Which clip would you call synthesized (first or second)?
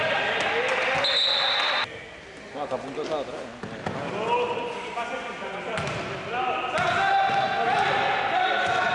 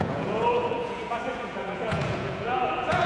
second